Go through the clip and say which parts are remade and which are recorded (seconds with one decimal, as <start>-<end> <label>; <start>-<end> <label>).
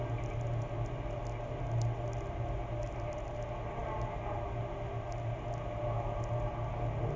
0.0-7.2 recorded